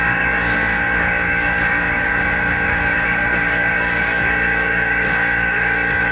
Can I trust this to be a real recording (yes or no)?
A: no